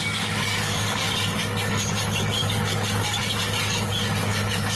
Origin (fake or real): fake